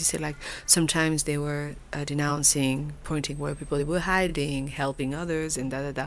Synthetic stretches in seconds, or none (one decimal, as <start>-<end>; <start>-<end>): 0.9-1.7; 4.3-5.0